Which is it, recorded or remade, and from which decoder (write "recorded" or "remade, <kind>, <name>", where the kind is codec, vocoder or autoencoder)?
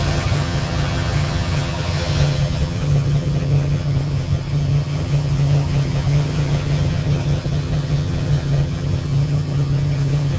remade, vocoder, HiFi-GAN